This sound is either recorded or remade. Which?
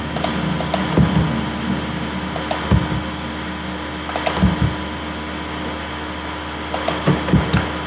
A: recorded